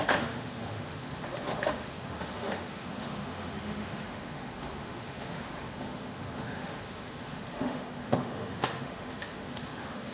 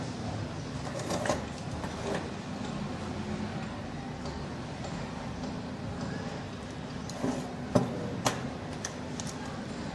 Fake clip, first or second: first